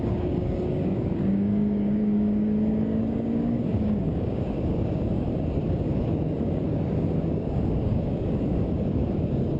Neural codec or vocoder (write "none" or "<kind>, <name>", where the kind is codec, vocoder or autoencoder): codec, DAC